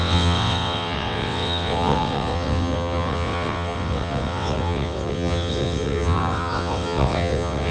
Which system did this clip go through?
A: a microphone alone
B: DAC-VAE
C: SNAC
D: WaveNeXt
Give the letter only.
D